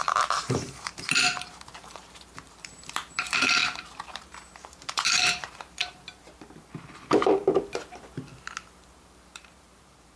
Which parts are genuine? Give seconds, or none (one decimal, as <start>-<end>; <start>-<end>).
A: 7.4-9.0